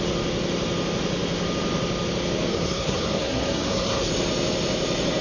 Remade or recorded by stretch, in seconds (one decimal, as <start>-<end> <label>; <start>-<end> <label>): 0.0-2.5 recorded; 2.5-4.1 remade; 4.1-5.2 recorded